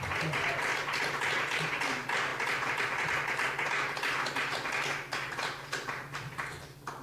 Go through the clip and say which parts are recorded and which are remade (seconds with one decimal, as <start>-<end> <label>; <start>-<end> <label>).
0.0-7.0 recorded

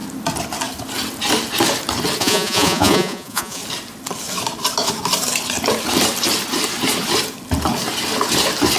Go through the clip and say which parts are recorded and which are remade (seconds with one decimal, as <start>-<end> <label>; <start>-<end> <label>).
0.0-2.2 recorded; 2.2-3.6 remade; 3.6-8.8 recorded

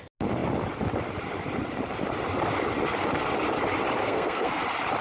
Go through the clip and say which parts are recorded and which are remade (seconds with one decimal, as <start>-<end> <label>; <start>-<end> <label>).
0.0-4.0 recorded; 4.0-4.6 remade; 4.6-5.0 recorded

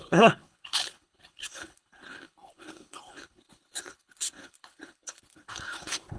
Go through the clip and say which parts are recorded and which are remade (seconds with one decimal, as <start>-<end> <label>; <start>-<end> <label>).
0.0-6.2 remade

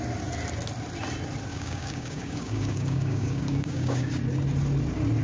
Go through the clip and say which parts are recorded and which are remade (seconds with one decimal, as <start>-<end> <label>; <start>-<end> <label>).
0.0-1.5 recorded; 1.5-4.1 remade; 4.1-5.2 recorded